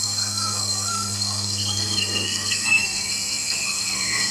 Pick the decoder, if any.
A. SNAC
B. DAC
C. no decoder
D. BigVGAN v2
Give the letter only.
A